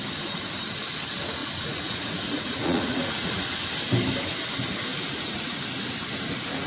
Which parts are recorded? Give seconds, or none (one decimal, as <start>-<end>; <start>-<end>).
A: 0.0-1.4; 3.3-4.9; 5.6-6.7